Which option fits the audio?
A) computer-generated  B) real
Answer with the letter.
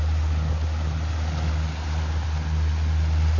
B